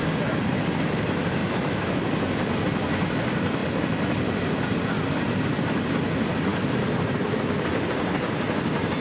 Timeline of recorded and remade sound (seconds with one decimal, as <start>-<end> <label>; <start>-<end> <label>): 0.0-1.4 recorded; 1.4-2.1 remade; 2.1-9.0 recorded